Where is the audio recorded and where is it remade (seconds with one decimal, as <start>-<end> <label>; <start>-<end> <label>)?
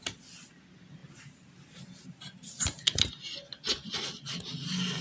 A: 0.0-5.0 recorded